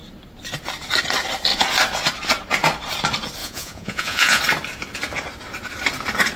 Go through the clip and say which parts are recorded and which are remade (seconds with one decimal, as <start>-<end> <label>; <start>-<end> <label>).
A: 0.0-3.4 recorded; 3.4-4.4 remade; 4.4-6.4 recorded